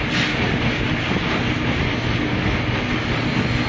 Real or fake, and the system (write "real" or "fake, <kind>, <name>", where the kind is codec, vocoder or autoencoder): real